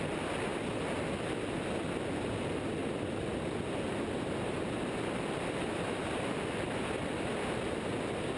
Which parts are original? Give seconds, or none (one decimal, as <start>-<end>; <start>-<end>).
0.0-8.4